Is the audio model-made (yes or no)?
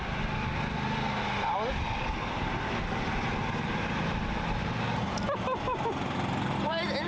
no